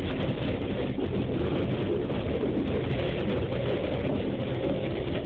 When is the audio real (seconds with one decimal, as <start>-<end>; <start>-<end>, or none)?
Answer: 0.0-4.5